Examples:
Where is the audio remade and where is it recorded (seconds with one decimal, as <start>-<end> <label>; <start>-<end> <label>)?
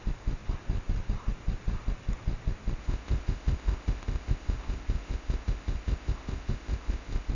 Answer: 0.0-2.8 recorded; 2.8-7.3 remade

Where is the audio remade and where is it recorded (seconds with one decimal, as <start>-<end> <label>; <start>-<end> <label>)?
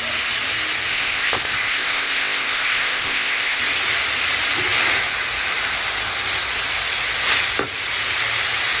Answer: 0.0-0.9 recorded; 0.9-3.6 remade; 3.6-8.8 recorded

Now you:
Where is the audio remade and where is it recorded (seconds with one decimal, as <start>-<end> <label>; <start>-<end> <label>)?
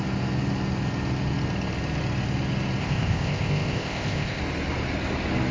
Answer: 0.0-2.8 recorded; 2.8-4.4 remade; 4.4-5.5 recorded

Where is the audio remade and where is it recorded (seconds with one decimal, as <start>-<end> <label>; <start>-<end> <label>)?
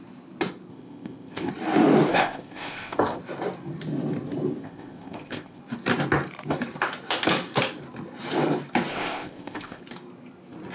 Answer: 0.0-0.7 recorded; 0.7-1.5 remade; 1.5-2.1 recorded; 2.1-3.2 remade; 3.2-4.6 recorded; 4.6-5.6 remade; 5.6-8.9 recorded; 8.9-9.8 remade; 9.8-10.7 recorded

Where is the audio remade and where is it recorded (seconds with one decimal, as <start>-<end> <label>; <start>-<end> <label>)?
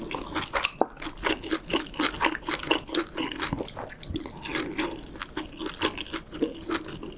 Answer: 0.0-7.2 recorded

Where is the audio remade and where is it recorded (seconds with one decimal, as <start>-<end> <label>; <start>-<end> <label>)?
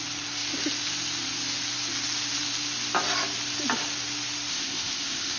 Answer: 0.0-4.5 recorded; 4.5-5.4 remade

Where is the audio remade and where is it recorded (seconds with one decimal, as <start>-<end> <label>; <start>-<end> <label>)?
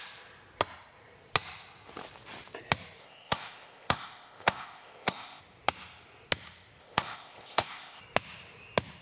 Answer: 0.0-3.0 recorded; 3.0-5.4 remade; 5.4-6.8 recorded; 6.8-8.0 remade; 8.0-9.0 recorded